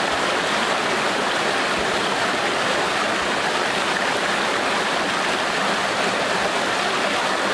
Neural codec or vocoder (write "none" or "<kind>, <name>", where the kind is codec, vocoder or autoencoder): none